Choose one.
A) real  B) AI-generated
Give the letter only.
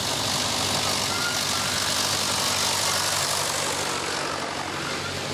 A